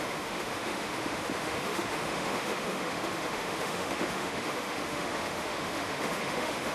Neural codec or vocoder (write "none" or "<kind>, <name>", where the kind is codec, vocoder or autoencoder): autoencoder, DAC-VAE